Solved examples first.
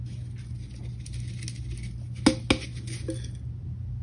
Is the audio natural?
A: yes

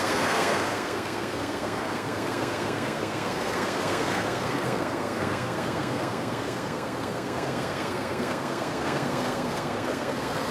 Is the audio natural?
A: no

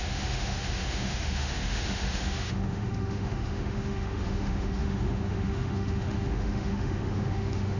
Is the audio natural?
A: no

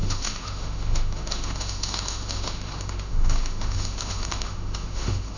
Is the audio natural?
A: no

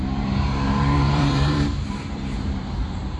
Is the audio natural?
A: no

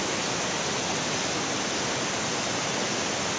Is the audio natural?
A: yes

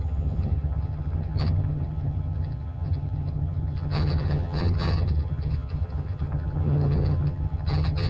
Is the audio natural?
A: no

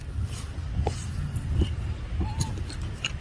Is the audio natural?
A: yes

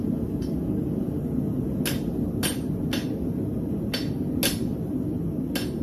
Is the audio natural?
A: yes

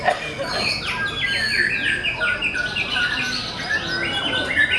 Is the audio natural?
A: yes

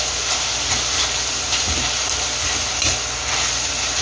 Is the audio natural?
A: yes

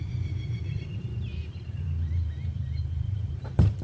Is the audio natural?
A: no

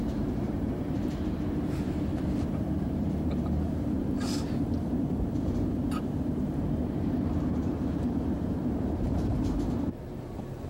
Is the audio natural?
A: no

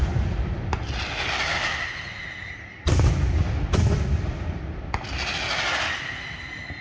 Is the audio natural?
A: yes